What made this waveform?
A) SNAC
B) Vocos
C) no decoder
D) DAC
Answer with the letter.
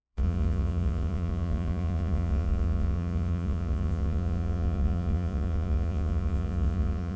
B